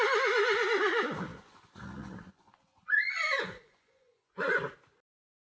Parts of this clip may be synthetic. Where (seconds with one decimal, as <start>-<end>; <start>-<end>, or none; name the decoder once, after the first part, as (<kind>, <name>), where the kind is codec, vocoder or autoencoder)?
1.3-4.6 (vocoder, Vocos)